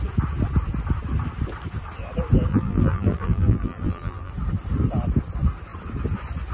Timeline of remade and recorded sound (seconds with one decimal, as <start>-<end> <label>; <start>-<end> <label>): 0.0-2.5 recorded; 2.5-4.3 remade; 4.3-6.5 recorded